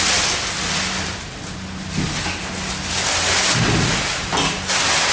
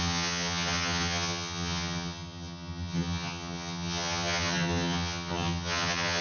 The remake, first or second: second